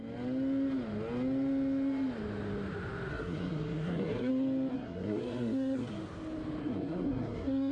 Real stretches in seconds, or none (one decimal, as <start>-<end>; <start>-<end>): 0.0-3.1; 4.3-4.7; 5.9-6.6

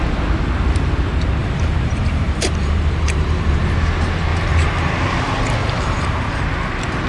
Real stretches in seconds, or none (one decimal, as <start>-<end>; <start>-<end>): 0.0-1.4; 3.6-4.3; 4.9-5.6; 6.4-7.1

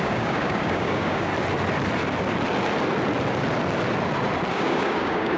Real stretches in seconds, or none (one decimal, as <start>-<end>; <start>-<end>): 1.3-4.5